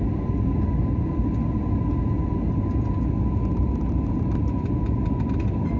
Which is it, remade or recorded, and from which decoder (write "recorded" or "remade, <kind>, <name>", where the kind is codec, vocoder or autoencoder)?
recorded